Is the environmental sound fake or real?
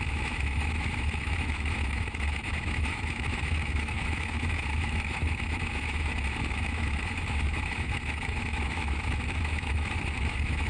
fake